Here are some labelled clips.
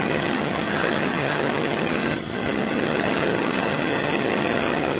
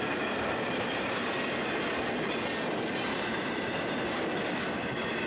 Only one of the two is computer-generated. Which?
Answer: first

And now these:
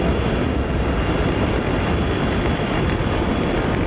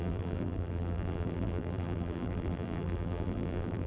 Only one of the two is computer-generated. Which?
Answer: second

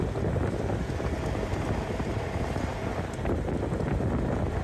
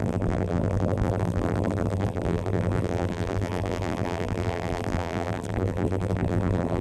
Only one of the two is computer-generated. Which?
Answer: second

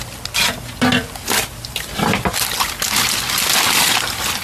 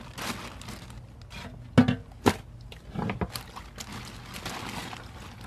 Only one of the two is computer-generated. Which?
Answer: first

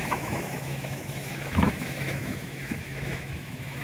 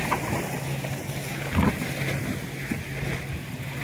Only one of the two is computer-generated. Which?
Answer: first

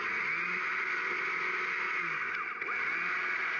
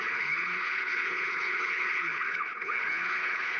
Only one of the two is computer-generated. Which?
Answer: second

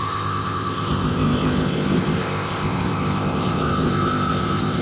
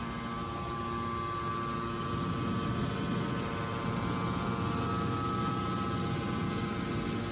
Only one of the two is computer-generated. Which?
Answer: first